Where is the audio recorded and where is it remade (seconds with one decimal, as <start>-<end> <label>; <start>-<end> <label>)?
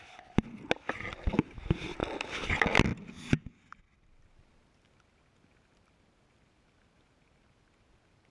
0.0-8.3 recorded